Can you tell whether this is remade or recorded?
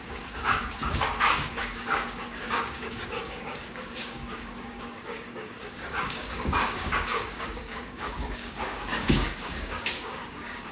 remade